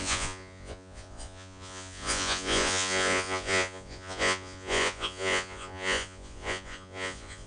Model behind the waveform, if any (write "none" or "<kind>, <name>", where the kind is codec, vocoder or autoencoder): vocoder, Vocos